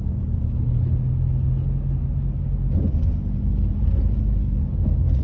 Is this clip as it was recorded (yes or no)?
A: yes